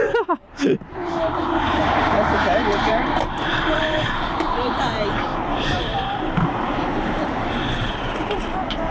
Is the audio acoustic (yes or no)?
no